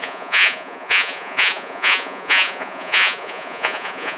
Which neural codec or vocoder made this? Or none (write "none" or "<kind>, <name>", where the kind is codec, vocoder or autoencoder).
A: vocoder, Vocos